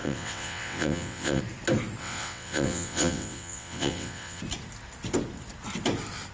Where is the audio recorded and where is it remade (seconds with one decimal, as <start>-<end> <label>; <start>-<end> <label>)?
0.0-1.4 remade; 1.4-2.0 recorded; 2.0-4.4 remade; 4.4-6.3 recorded